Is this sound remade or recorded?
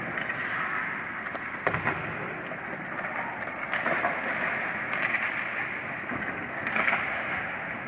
recorded